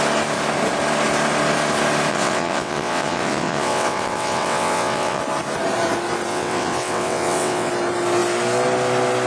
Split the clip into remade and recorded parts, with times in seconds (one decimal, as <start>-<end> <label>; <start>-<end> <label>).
0.0-2.1 recorded; 2.1-5.2 remade; 5.2-6.3 recorded; 6.3-7.7 remade; 7.7-9.3 recorded